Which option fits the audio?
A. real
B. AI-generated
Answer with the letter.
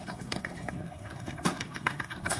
B